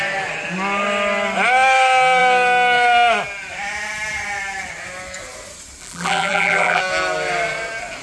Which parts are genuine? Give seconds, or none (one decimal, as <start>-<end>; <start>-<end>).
0.0-5.8; 6.8-8.0